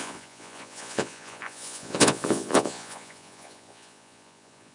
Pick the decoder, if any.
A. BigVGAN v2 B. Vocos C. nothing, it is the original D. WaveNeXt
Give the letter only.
B